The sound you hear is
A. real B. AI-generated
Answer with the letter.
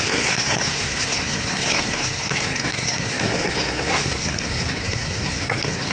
B